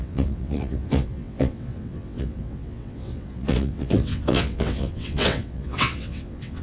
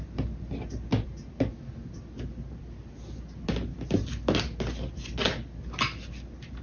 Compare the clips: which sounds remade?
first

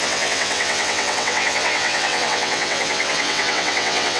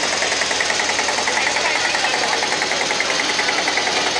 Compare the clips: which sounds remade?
first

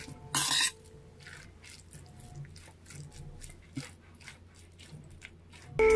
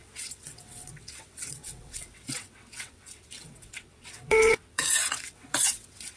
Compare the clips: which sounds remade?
second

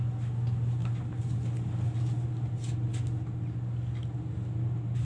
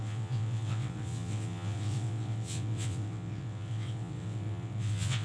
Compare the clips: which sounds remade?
second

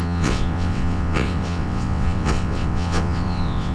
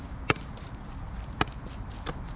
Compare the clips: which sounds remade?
first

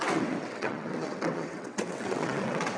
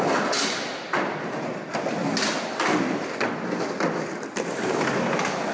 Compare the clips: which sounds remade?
first